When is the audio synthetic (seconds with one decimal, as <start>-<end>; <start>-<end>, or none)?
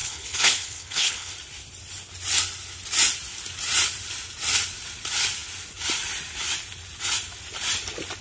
0.0-1.3